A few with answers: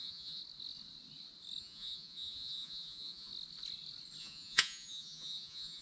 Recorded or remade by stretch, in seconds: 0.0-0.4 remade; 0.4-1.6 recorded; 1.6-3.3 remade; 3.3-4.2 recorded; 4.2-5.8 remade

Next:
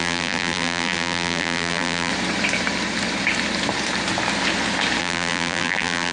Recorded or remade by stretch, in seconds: 0.0-2.1 remade; 2.1-5.0 recorded; 5.0-6.1 remade

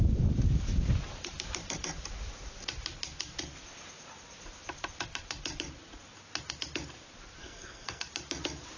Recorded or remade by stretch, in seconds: 0.0-7.4 recorded; 7.4-8.0 remade; 8.0-8.8 recorded

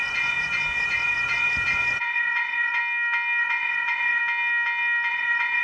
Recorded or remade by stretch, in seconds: 0.0-2.8 remade; 2.8-3.4 recorded; 3.4-4.2 remade; 4.2-5.1 recorded; 5.1-5.6 remade

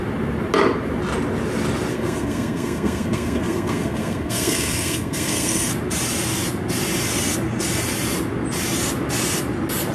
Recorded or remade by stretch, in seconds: 0.0-1.9 recorded; 1.9-5.7 remade; 5.7-9.9 recorded

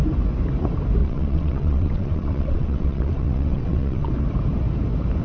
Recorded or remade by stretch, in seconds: 0.0-1.0 recorded; 1.0-4.1 remade; 4.1-5.2 recorded

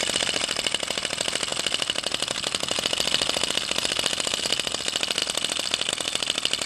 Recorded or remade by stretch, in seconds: 0.0-6.7 recorded